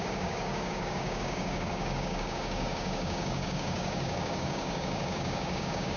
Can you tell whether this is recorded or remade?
remade